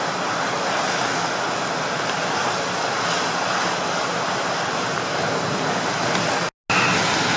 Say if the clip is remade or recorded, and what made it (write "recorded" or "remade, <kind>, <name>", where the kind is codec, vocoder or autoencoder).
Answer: recorded